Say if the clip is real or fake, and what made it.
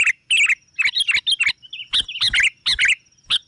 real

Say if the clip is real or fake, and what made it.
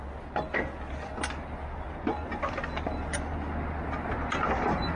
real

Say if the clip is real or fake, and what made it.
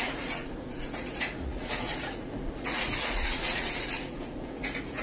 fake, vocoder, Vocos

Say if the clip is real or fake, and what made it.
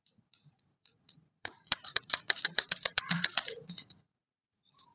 fake, vocoder, Vocos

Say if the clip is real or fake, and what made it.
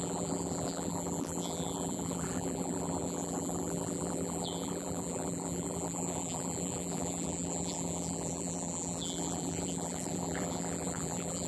fake, vocoder, BigVGAN v2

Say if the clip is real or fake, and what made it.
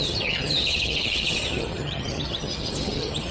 fake, vocoder, HiFi-GAN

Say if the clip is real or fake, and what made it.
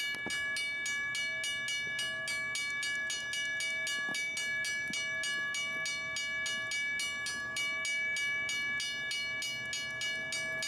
real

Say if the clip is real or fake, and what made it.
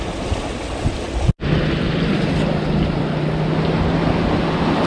real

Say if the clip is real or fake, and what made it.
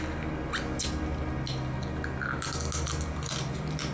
real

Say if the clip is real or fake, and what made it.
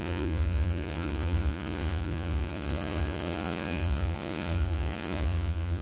fake, vocoder, Vocos